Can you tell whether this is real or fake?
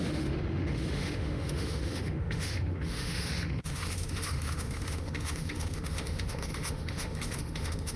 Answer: fake